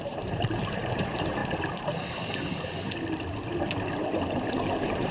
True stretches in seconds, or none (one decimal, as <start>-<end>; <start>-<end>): 1.4-4.5